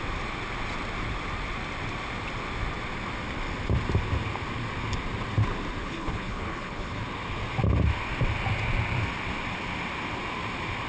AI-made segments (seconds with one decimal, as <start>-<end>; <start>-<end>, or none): 5.8-7.0